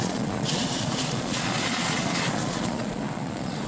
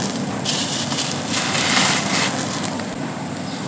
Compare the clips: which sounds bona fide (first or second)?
second